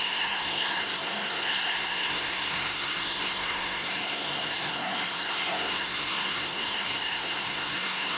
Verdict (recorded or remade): remade